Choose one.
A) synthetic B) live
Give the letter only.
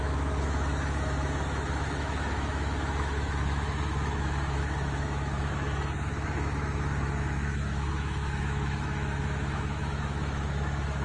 A